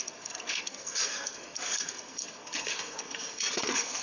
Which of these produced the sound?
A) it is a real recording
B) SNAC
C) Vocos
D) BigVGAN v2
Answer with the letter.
B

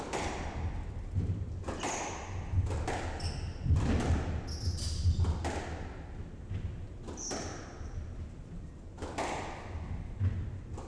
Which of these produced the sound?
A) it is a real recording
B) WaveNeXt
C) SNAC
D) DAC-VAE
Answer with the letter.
A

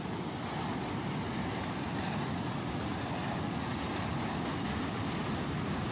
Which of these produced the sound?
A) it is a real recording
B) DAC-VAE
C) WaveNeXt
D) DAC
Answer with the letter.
A